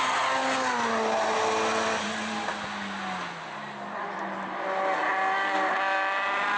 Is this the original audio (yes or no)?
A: yes